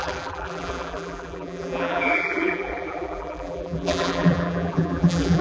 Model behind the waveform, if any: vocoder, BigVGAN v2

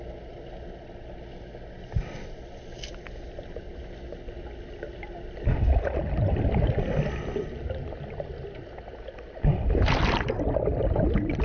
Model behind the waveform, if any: none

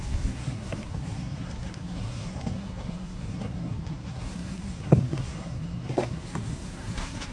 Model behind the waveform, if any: codec, SNAC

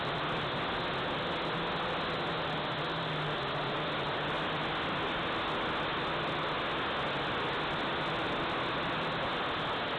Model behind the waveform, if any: none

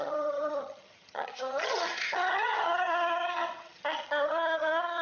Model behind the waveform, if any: vocoder, HiFi-GAN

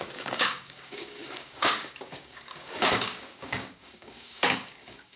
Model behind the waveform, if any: codec, DAC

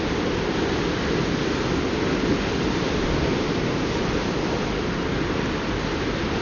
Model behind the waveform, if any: none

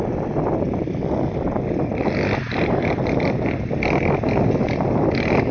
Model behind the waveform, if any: none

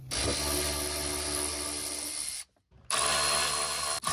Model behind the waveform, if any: none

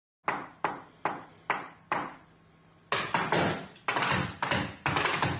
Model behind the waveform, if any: none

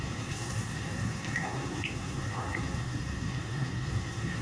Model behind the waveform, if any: codec, SNAC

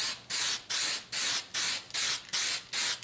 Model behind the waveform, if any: none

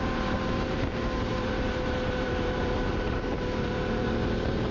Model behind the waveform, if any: vocoder, BigVGAN v2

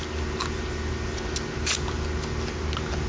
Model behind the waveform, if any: none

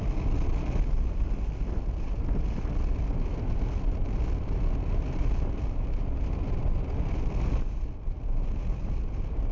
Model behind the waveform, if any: none